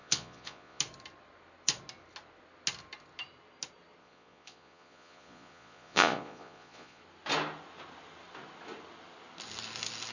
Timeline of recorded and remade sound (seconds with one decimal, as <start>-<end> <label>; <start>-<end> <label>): 0.0-0.8 remade; 0.8-4.0 recorded; 4.0-7.0 remade; 7.0-10.1 recorded